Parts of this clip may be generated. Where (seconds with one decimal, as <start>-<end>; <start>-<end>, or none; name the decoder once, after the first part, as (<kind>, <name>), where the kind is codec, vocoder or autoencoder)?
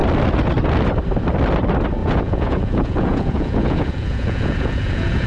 2.0-5.3 (vocoder, Vocos)